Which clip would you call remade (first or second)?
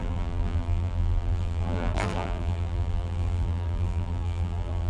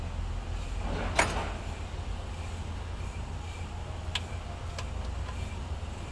first